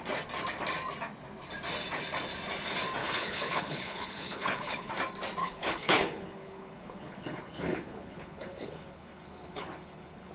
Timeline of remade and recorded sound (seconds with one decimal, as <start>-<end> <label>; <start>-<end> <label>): 0.0-3.0 recorded; 3.0-4.9 remade; 4.9-5.4 recorded; 5.4-10.3 remade